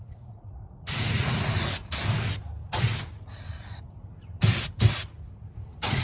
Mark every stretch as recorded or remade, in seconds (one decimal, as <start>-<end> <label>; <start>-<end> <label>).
0.0-1.8 remade; 1.8-5.4 recorded; 5.4-6.0 remade